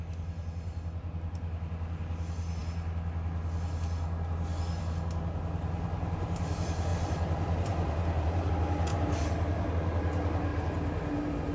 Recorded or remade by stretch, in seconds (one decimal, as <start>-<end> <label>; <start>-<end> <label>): 0.0-6.9 recorded; 6.9-8.5 remade; 8.5-8.9 recorded; 8.9-9.7 remade; 9.7-10.5 recorded; 10.5-11.5 remade